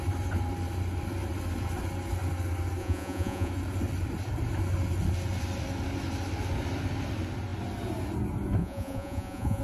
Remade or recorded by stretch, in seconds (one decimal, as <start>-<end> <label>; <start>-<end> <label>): 0.0-2.8 recorded; 2.8-3.5 remade; 3.5-8.6 recorded; 8.6-9.6 remade